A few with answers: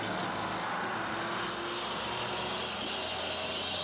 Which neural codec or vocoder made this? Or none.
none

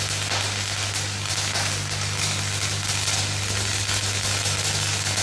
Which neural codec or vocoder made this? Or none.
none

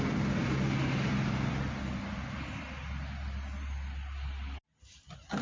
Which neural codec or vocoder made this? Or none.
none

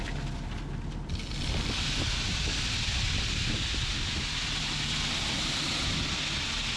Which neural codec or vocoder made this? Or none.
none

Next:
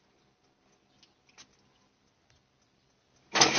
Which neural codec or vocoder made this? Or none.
none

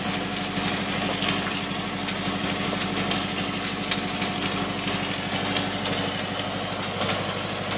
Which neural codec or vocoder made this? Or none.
none